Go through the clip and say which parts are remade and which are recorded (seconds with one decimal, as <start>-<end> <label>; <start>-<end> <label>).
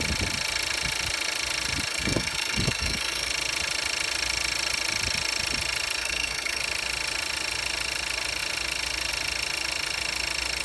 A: 0.0-1.9 recorded; 1.9-3.3 remade; 3.3-6.0 recorded; 6.0-6.6 remade; 6.6-10.6 recorded